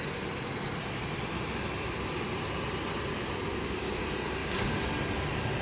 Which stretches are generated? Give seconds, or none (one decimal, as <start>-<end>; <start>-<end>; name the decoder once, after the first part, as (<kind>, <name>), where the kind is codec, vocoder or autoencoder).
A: 3.5-4.0 (codec, DAC); 4.4-4.9